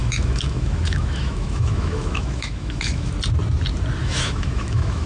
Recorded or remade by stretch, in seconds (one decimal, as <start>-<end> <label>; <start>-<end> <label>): 0.0-3.1 remade; 3.1-4.0 recorded; 4.0-5.1 remade